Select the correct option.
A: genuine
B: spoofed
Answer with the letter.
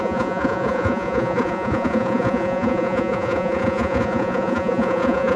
B